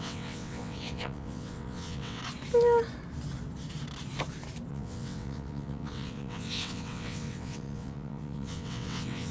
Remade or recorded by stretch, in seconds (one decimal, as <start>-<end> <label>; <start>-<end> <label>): 0.0-2.2 remade; 2.2-4.7 recorded; 4.7-9.3 remade